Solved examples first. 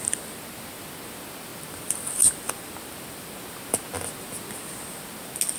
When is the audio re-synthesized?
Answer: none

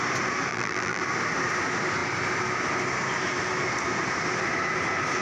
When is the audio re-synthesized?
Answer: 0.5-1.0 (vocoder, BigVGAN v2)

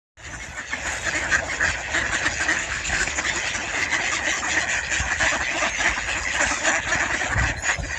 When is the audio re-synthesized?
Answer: 2.6-3.2 (codec, SNAC)

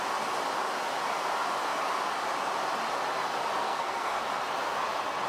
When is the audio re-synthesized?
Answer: 3.6-4.2 (codec, SNAC)

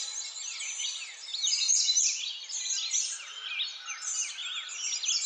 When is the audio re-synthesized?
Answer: none

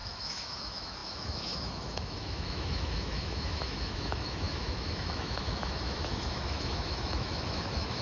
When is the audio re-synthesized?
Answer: 0.0-8.0 (autoencoder, DAC-VAE)